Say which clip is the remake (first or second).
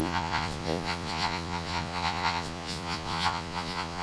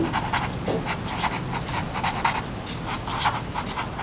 first